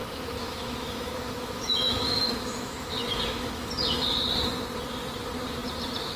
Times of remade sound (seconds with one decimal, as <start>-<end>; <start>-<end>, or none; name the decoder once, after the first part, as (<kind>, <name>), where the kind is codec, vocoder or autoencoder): 0.0-3.7 (autoencoder, DAC-VAE)